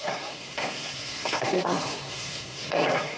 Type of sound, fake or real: fake